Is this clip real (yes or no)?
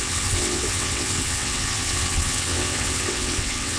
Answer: no